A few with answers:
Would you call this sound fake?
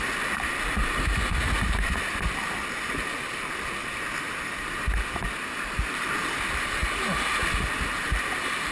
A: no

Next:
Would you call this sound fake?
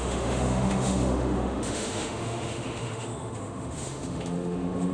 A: yes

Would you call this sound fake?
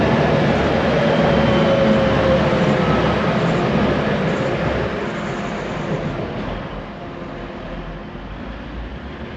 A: no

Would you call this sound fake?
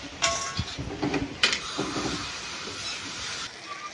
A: no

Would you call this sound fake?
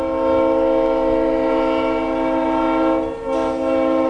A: no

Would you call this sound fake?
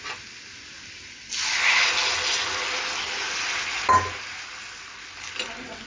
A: no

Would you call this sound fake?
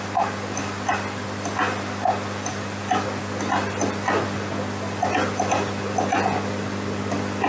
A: no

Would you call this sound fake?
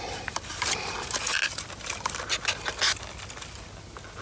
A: no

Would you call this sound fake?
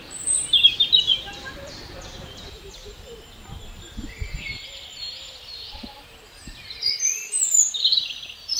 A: yes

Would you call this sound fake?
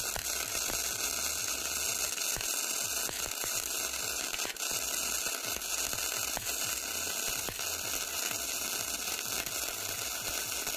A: no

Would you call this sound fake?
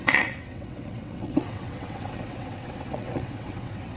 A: yes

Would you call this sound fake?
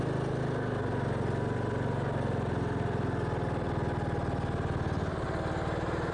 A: no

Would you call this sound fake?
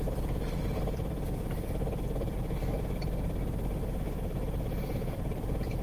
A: yes